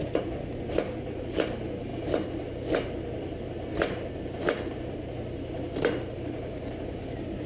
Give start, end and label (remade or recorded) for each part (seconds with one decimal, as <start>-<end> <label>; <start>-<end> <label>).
0.0-7.5 recorded